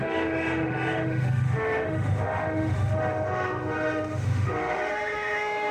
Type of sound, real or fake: fake